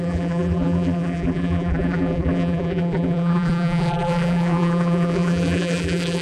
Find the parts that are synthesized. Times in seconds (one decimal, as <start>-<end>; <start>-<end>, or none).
0.0-6.2